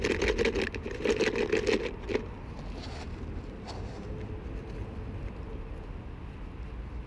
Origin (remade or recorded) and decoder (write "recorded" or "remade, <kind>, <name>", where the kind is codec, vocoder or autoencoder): recorded